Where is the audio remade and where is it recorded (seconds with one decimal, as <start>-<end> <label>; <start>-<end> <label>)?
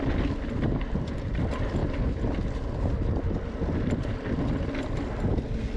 0.0-5.8 recorded